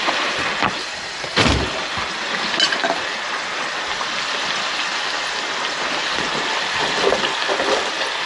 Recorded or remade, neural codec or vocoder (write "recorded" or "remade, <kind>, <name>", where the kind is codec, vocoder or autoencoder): recorded